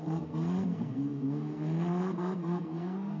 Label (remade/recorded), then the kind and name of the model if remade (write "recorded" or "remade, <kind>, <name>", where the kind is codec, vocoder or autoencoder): remade, codec, SNAC